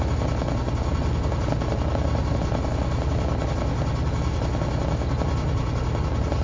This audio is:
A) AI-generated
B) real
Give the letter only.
B